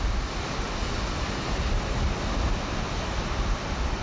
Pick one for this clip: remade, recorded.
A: recorded